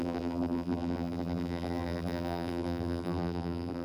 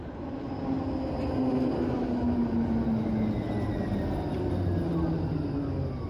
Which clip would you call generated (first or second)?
first